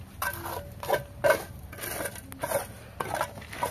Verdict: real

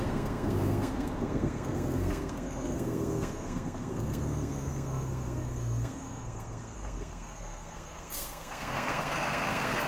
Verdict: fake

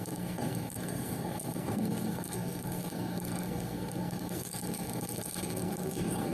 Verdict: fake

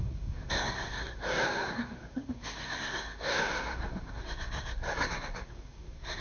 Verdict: fake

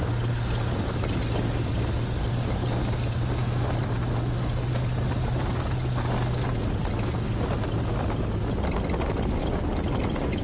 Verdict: real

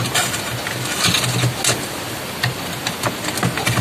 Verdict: real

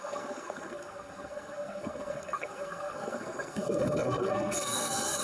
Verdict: fake